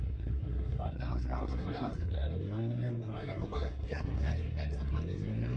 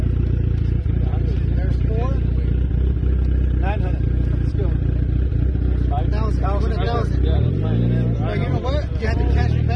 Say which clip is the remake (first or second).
first